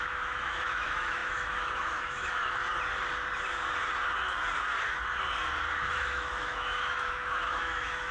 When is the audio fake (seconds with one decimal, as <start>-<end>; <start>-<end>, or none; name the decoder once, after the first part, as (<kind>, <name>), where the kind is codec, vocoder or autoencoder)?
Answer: 0.0-2.6 (autoencoder, DAC-VAE); 5.9-8.1